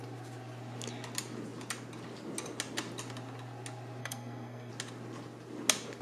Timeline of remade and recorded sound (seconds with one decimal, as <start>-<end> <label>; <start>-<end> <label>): 0.0-4.0 recorded; 4.0-4.7 remade; 4.7-6.0 recorded

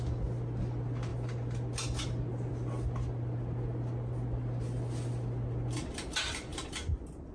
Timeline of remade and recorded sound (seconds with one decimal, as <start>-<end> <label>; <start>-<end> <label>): 0.0-7.3 recorded